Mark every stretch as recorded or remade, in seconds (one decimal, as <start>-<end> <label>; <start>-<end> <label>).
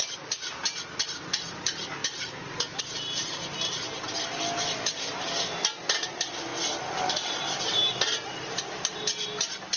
0.0-9.8 recorded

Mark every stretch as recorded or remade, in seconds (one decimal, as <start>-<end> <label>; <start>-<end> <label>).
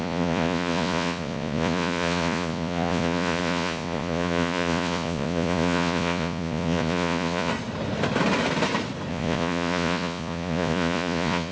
0.0-7.5 remade; 7.5-9.1 recorded; 9.1-11.5 remade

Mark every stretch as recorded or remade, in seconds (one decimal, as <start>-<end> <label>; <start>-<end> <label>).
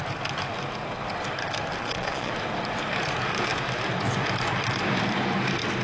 0.0-1.8 recorded; 1.8-2.3 remade; 2.3-5.8 recorded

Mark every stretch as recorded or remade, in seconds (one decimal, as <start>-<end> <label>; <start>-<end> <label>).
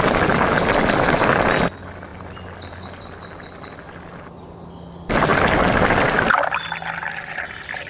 0.0-7.9 recorded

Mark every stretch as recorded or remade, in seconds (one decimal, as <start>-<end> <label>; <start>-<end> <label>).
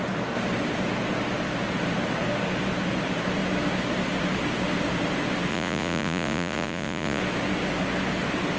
0.0-5.5 recorded; 5.5-7.2 remade; 7.2-8.6 recorded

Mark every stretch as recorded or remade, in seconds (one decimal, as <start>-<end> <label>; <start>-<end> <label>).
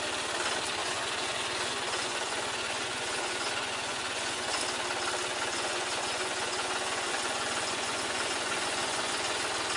0.0-0.8 recorded; 0.8-4.6 remade; 4.6-5.3 recorded; 5.3-9.4 remade; 9.4-9.8 recorded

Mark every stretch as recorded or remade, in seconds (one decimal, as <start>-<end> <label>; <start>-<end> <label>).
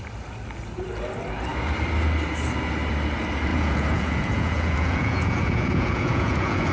0.0-3.5 recorded; 3.5-6.7 remade